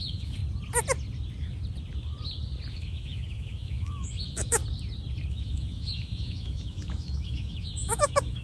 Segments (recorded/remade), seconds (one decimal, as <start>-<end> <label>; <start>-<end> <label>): 0.0-0.4 remade; 0.4-2.7 recorded; 2.7-4.6 remade; 4.6-5.3 recorded; 5.3-8.4 remade